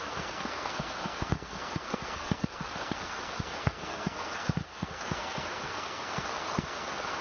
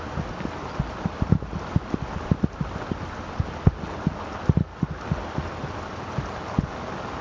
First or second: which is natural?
second